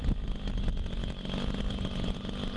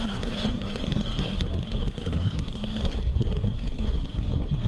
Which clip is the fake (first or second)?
second